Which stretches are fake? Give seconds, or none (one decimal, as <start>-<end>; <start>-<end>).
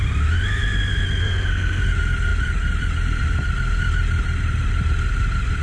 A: 1.2-1.8